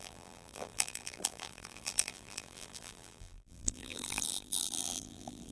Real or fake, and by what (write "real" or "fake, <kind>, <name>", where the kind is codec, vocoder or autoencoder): fake, vocoder, BigVGAN v2